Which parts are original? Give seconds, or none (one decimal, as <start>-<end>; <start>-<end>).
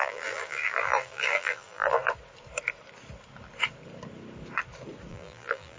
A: 2.0-5.1